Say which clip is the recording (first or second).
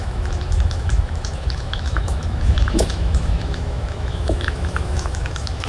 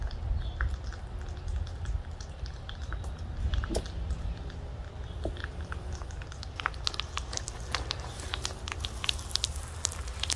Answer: second